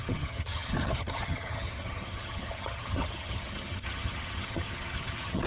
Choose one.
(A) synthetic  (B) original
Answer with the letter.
A